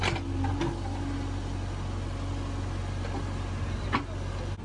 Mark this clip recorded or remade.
recorded